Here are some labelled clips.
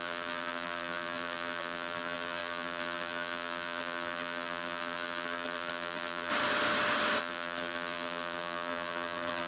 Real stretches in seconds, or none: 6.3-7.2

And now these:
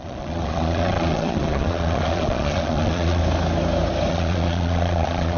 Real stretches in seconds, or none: 3.2-4.1